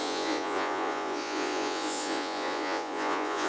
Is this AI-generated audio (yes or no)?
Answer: yes